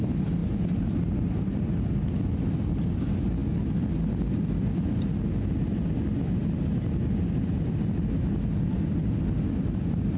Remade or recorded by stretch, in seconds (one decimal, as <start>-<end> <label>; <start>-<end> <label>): 0.0-0.4 recorded; 0.4-0.9 remade; 0.9-10.2 recorded